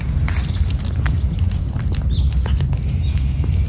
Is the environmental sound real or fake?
real